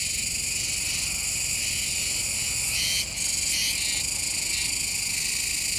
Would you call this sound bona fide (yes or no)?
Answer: yes